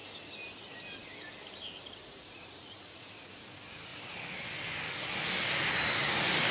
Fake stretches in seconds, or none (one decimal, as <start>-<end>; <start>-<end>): 2.0-3.3